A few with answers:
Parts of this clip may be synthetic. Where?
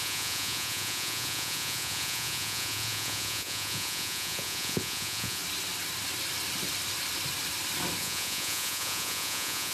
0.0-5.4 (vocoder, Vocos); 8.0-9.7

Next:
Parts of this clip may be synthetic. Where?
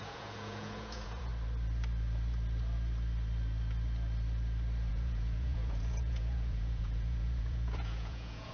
0.0-1.3 (vocoder, Vocos); 4.9-8.5